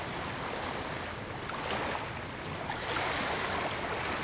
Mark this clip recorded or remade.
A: recorded